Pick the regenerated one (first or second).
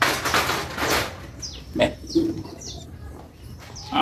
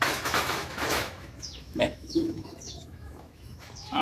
second